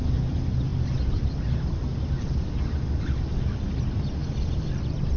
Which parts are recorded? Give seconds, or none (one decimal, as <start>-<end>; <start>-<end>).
0.0-5.2